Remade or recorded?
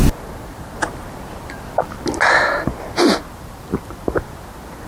recorded